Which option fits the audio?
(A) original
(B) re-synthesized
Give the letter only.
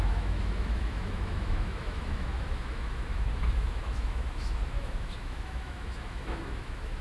B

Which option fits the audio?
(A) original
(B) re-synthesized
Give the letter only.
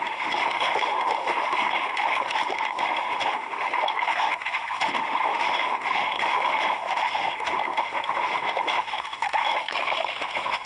B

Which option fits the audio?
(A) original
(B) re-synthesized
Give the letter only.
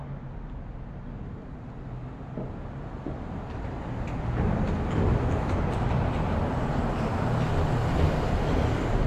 A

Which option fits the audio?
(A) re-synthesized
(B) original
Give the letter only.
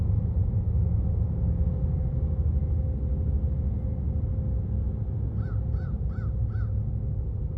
B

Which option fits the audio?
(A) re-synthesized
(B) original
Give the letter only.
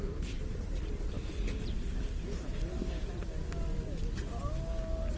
B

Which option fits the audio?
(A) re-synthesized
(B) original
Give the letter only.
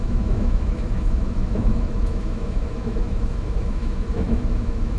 A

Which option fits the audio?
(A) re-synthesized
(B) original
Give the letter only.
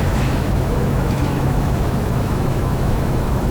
A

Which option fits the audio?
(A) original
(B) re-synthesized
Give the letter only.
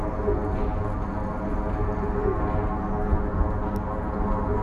A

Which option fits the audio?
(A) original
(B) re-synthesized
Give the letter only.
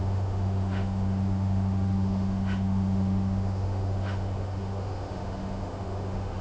B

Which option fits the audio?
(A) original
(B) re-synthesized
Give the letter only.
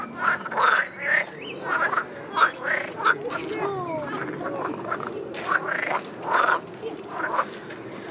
A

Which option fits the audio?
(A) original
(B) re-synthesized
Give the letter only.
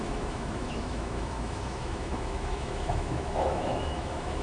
B